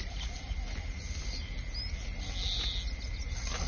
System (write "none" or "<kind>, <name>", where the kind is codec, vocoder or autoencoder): none